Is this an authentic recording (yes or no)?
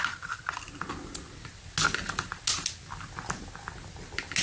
yes